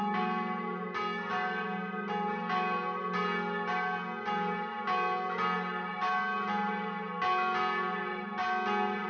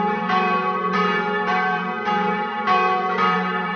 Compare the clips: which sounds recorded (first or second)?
first